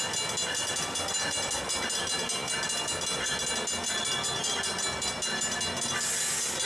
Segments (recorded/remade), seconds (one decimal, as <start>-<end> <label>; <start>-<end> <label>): 0.0-6.7 recorded